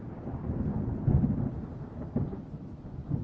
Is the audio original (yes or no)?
yes